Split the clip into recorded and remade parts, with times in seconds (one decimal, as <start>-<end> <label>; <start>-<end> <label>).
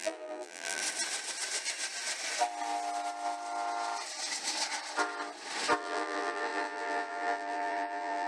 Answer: 0.0-0.8 remade; 0.8-5.8 recorded; 5.8-8.3 remade